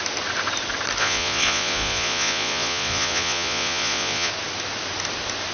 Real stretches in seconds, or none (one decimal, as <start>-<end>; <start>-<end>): 0.0-1.0; 4.3-5.5